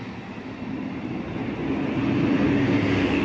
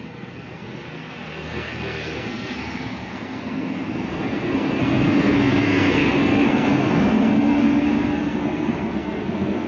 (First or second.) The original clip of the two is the first